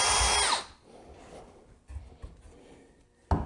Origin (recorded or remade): recorded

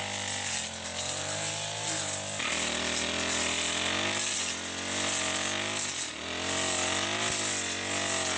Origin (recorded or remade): recorded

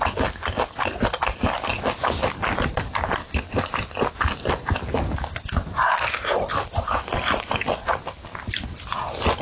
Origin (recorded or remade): recorded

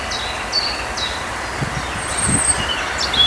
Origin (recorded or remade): recorded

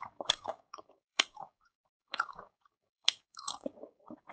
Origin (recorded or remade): remade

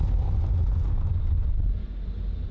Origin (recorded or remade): recorded